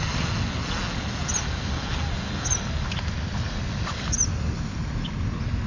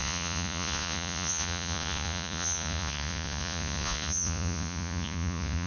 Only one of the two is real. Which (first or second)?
first